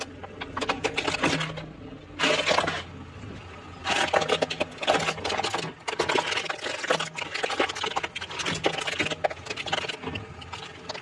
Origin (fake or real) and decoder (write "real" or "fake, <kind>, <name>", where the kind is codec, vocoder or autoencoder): real